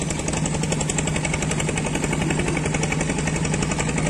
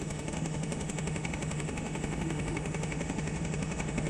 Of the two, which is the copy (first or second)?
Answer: second